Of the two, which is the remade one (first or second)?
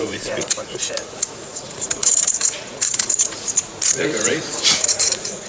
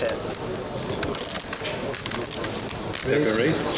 first